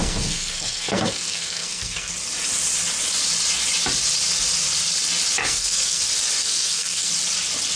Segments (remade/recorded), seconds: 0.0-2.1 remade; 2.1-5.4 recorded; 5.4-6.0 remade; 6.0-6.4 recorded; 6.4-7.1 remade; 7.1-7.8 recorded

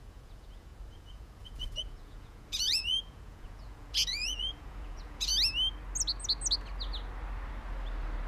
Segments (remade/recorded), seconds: 0.0-5.3 remade; 5.3-8.3 recorded

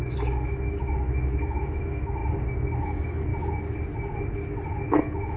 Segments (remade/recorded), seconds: 0.0-2.2 remade; 2.2-2.8 recorded; 2.8-3.3 remade; 3.3-5.0 recorded; 5.0-5.4 remade

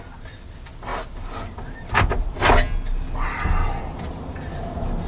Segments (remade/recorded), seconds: 0.0-5.1 recorded

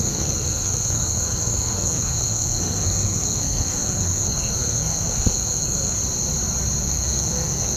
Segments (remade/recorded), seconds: 0.0-6.0 remade; 6.0-6.8 recorded; 6.8-7.8 remade

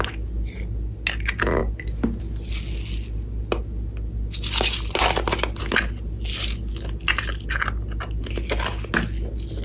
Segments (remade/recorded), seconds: 0.0-9.6 recorded